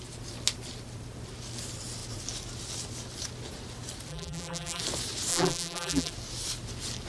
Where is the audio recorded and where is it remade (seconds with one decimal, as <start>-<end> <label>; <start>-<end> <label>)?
0.0-4.1 recorded; 4.1-4.8 remade; 4.8-5.3 recorded; 5.3-6.1 remade; 6.1-7.1 recorded